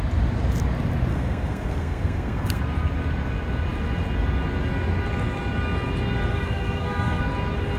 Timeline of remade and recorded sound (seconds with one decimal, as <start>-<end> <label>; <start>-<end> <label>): 0.0-1.1 recorded; 1.1-2.6 remade; 2.6-6.3 recorded; 6.3-7.2 remade; 7.2-7.8 recorded